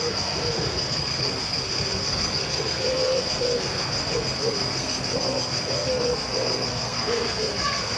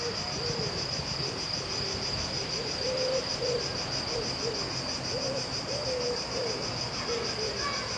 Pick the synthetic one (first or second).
first